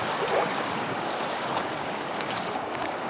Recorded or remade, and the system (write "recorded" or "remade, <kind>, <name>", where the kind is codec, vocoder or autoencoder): remade, codec, DAC